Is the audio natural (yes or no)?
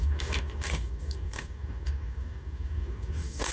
no